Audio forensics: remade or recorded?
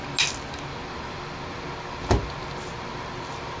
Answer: recorded